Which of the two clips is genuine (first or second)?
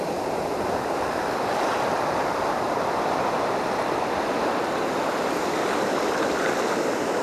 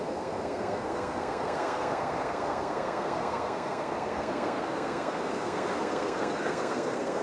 first